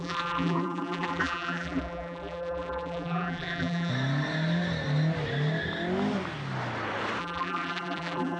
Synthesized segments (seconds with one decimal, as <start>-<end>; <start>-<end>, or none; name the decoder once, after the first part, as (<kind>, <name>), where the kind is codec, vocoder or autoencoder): 0.0-3.9 (vocoder, BigVGAN v2); 7.2-8.4